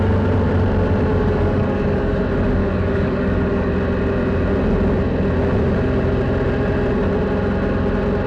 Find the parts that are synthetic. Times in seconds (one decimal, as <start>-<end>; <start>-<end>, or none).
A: 1.1-2.2; 2.6-3.7